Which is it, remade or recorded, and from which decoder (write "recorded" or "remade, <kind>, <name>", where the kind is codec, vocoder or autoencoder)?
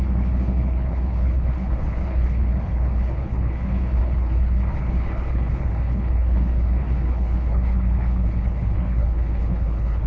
remade, codec, HILCodec